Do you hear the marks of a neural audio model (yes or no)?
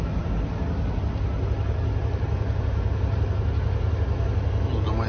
no